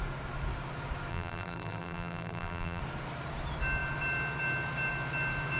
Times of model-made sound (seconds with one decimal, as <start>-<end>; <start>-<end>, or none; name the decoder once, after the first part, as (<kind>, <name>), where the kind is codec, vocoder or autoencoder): 1.1-2.8 (vocoder, BigVGAN v2)